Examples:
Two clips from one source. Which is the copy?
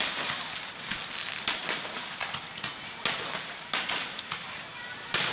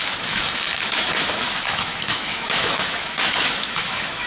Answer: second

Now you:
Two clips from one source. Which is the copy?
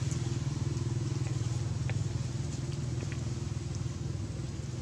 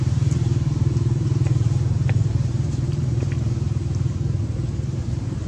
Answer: second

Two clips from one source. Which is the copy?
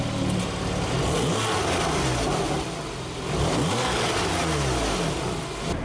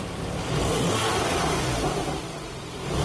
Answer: second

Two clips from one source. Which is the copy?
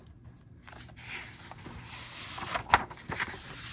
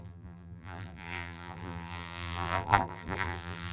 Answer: second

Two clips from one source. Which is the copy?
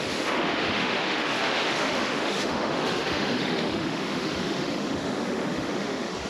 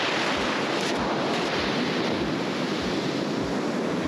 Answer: first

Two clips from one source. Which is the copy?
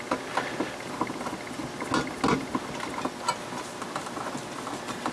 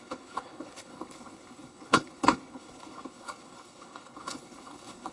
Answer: second